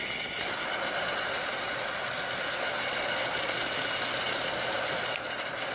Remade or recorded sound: recorded